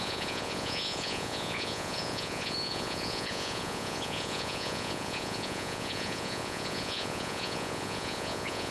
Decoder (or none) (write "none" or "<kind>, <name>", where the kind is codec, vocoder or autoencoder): vocoder, Vocos